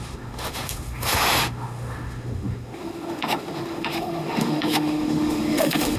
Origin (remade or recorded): remade